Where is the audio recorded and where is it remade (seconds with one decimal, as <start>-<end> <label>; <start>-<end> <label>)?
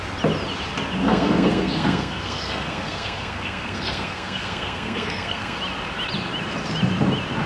0.0-1.1 recorded; 1.1-5.6 remade; 5.6-7.5 recorded